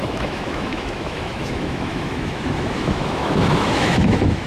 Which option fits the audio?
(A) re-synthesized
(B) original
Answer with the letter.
A